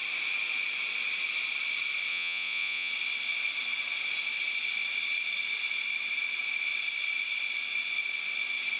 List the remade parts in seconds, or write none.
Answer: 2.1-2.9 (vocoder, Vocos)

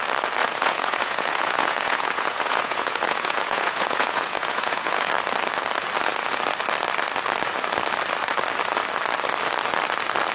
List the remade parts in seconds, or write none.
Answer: 0.4-5.1 (vocoder, Vocos)

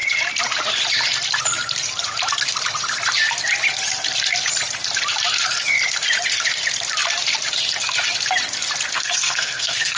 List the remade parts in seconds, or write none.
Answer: 8.9-10.0 (codec, SNAC)